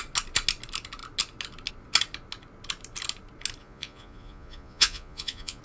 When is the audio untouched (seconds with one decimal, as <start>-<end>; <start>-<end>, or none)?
0.0-3.6